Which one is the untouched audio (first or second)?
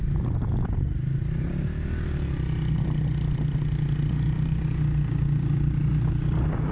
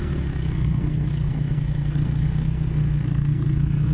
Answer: first